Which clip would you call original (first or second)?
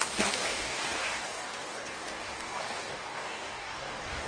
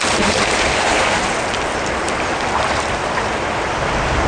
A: second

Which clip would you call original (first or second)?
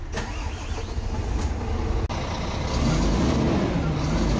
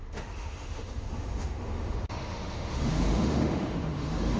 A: first